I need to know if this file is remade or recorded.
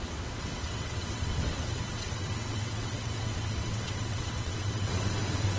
remade